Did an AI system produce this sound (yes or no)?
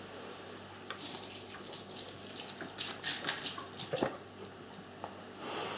no